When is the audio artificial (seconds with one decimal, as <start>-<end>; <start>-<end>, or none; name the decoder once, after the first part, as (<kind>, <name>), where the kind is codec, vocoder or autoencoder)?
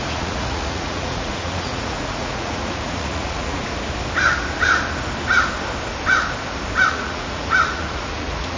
0.0-3.6 (vocoder, Vocos); 6.9-8.6